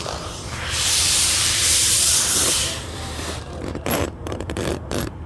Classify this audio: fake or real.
fake